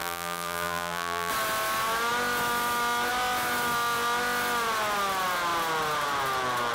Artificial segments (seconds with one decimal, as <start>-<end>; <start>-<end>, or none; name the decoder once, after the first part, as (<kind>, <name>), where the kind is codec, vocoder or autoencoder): 0.0-1.3 (vocoder, BigVGAN v2)